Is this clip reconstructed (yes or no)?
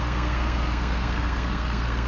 yes